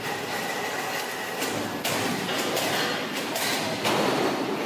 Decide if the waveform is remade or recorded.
recorded